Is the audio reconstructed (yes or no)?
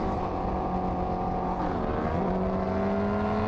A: no